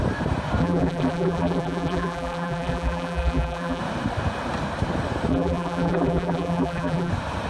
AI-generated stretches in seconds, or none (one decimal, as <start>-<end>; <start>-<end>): 0.6-3.8; 5.3-7.1